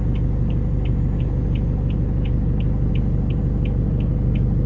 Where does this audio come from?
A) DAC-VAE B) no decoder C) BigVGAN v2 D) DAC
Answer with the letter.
B